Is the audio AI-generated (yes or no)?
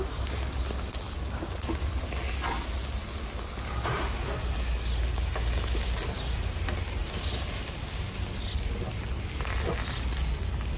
no